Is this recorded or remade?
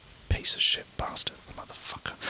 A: recorded